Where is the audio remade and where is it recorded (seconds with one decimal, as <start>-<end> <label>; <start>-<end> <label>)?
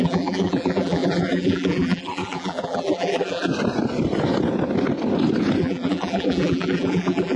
0.0-3.5 remade; 3.5-5.6 recorded; 5.6-7.4 remade